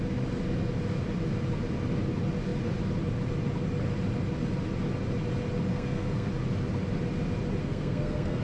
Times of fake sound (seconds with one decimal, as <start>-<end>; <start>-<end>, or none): 5.7-6.3; 7.6-8.4

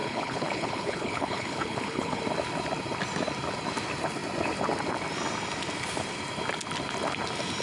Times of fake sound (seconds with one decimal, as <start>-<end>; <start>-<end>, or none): 0.0-2.2

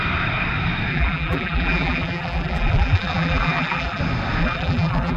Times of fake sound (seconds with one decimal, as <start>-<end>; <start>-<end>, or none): 0.9-4.0; 4.4-5.2

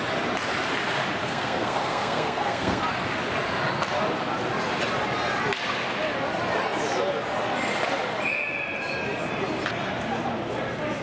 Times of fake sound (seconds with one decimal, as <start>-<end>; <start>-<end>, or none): 1.2-2.8

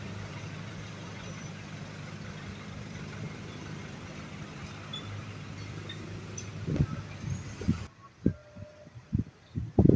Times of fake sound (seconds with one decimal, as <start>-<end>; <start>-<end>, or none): 0.0-6.5; 7.8-10.0

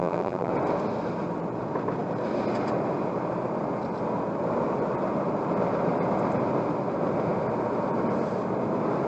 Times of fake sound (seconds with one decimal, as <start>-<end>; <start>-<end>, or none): 0.0-0.5

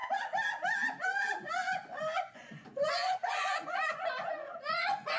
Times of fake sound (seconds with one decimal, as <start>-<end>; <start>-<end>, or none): 1.0-5.2

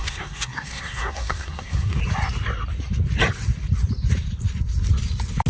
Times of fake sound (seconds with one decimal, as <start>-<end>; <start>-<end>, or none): 0.0-2.0